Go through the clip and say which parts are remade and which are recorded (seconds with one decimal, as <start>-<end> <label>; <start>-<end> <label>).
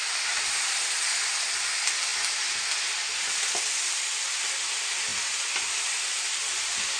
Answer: 0.0-7.0 recorded